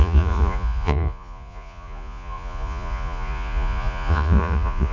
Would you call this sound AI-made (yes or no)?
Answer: yes